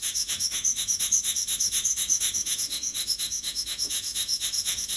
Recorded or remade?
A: remade